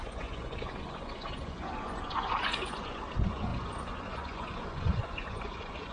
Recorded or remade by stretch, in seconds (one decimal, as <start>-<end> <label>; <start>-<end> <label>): 0.0-5.9 remade